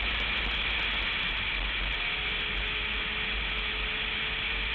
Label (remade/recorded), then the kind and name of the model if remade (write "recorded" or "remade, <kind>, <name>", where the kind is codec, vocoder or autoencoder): recorded